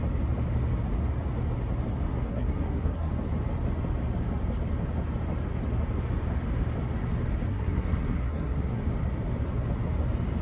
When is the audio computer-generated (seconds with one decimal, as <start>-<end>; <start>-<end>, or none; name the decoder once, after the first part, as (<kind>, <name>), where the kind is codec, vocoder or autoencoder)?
2.3-3.1 (codec, SNAC); 7.5-8.8